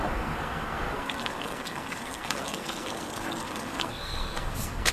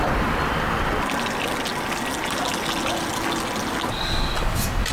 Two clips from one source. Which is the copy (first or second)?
first